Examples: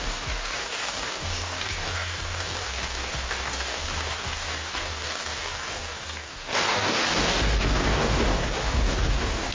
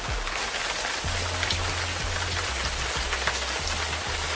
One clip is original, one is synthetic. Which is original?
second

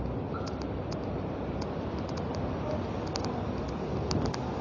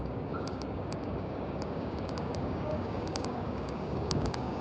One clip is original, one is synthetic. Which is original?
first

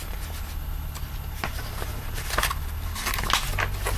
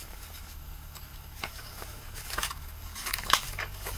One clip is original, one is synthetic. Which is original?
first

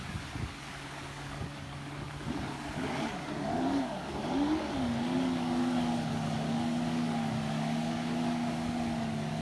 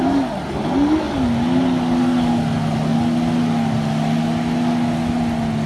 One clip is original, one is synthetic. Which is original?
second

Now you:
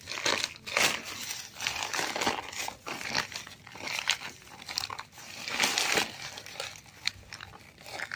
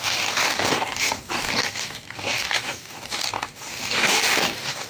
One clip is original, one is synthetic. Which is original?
first